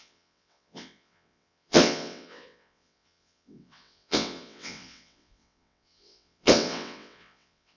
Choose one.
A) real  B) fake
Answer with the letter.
B